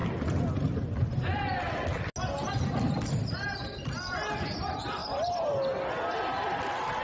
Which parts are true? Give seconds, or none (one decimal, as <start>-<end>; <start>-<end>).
0.0-2.9; 5.0-6.3